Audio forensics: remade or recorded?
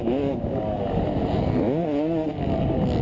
recorded